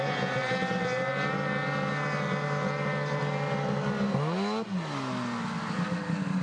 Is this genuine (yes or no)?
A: yes